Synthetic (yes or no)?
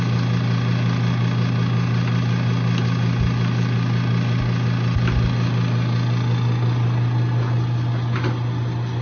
no